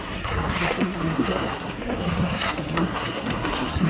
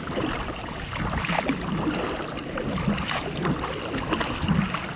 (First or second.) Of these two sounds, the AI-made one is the first